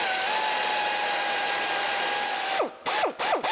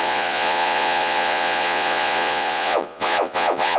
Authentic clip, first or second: first